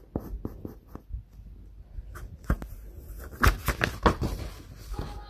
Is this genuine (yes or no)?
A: yes